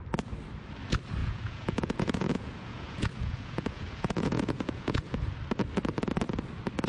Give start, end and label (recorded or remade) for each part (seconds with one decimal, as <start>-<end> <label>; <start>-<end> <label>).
0.0-1.2 recorded; 1.2-5.3 remade; 5.3-6.9 recorded